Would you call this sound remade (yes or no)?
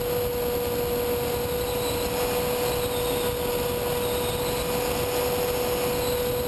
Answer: no